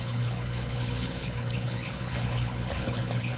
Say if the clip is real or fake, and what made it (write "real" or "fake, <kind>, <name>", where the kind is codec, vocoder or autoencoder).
fake, codec, HILCodec